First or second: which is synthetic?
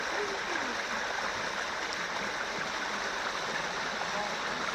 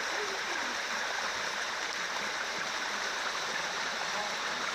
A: second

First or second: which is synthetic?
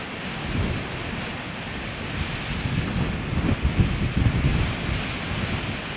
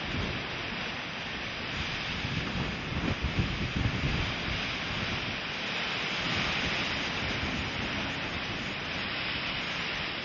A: second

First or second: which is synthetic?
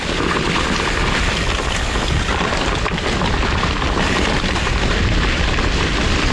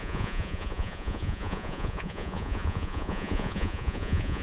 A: second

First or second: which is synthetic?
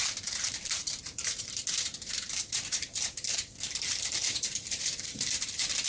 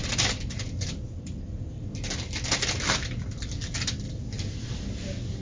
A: first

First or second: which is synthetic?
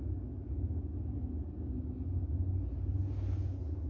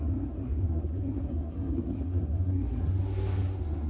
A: second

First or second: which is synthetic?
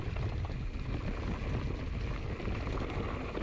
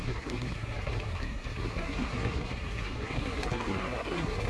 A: second